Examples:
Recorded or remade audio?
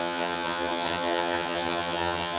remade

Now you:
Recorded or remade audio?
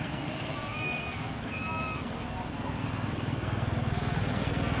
remade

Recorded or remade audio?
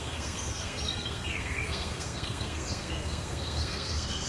remade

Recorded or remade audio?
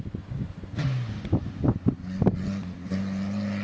recorded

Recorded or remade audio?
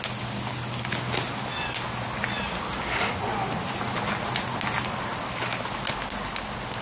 recorded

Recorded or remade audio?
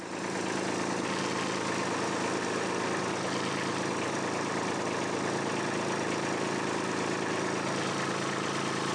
recorded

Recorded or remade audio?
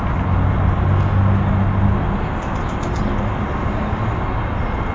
recorded